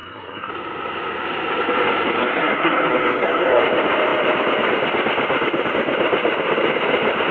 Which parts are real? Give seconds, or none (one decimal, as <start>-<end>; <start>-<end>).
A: 0.5-2.2; 3.6-7.3